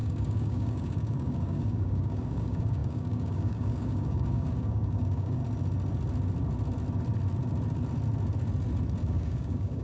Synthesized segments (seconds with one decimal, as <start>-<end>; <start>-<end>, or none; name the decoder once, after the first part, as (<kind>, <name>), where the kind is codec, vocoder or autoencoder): 0.0-5.4 (codec, DAC); 9.0-9.8